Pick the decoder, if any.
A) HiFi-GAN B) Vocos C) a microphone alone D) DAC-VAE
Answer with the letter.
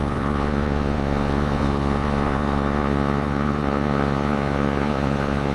B